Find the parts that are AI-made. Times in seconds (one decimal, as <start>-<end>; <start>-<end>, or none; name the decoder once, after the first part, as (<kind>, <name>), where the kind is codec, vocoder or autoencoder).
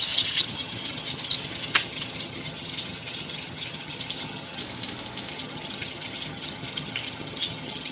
0.0-4.6 (vocoder, HiFi-GAN); 5.3-7.9